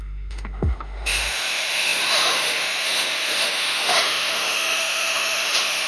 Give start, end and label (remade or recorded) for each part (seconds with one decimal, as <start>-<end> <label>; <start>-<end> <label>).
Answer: 0.0-5.9 remade